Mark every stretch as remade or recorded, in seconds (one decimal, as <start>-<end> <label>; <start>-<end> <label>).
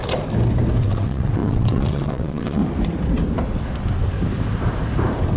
0.0-0.8 recorded; 0.8-2.6 remade; 2.6-5.4 recorded